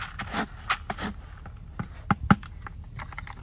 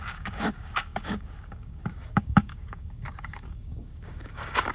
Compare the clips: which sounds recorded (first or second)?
first